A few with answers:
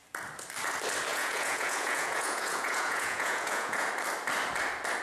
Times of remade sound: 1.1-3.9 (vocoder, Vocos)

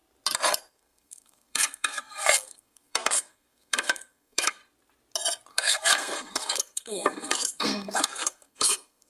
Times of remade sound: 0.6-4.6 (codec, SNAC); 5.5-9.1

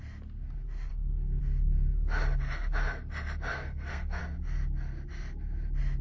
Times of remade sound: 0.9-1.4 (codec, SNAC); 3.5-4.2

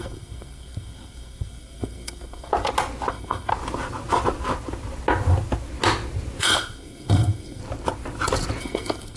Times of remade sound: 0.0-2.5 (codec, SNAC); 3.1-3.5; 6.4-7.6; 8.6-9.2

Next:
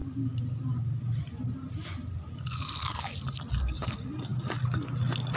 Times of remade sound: 0.0-5.4 (vocoder, BigVGAN v2)